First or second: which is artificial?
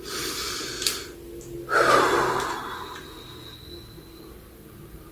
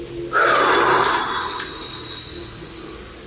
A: second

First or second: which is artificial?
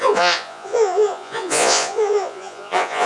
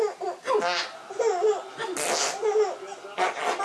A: first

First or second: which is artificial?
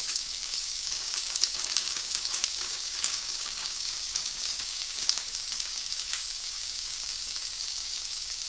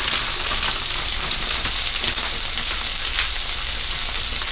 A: first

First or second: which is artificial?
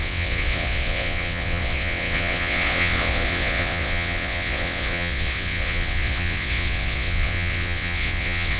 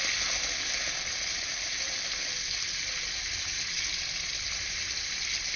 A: first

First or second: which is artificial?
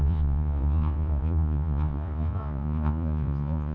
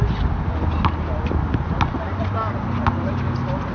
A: first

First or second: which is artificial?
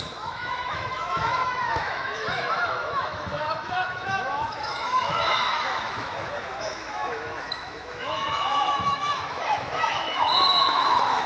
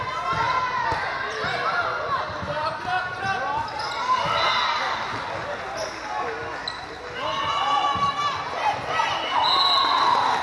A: first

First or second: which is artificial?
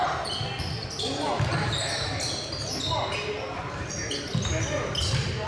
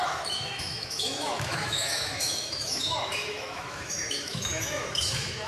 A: second